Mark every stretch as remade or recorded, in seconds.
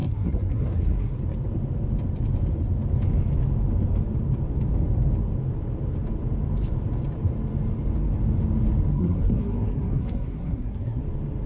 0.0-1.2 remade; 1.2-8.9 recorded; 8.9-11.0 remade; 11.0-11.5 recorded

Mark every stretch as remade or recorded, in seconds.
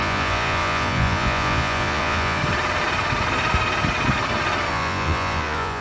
0.0-2.4 remade; 2.4-4.7 recorded; 4.7-5.8 remade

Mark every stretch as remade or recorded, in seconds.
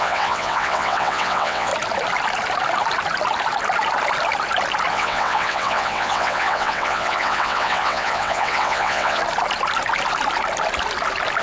0.0-1.7 remade; 1.7-4.9 recorded; 4.9-9.2 remade; 9.2-11.4 recorded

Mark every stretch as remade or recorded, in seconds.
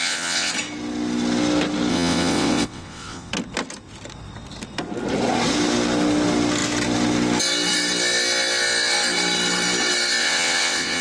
0.0-0.5 remade; 0.5-1.9 recorded; 1.9-3.3 remade; 3.3-10.2 recorded; 10.2-11.0 remade